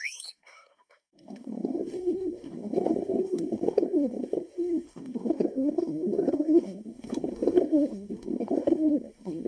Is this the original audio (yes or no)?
no